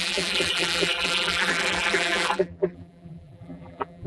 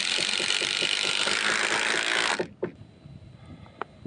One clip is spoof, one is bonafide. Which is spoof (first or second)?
first